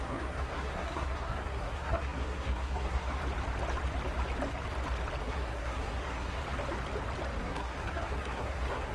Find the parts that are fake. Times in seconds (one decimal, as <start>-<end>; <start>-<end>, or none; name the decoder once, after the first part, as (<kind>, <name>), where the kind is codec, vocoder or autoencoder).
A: 0.0-3.2 (codec, SNAC); 5.2-6.4; 7.4-8.9

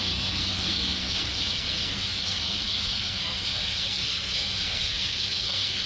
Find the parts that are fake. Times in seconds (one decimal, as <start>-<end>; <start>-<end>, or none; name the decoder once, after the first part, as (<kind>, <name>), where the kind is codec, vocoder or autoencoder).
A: 0.0-5.9 (codec, SNAC)

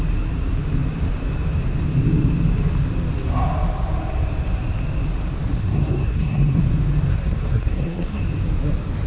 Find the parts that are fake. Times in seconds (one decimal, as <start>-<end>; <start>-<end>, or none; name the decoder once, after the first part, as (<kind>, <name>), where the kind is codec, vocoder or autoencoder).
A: 5.6-6.6 (codec, SNAC); 7.1-8.2

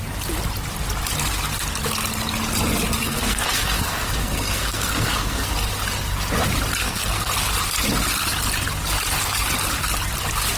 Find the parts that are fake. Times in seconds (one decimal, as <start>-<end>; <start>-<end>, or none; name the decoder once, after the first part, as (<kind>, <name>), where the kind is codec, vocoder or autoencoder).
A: 3.0-5.5 (codec, SNAC); 6.8-7.3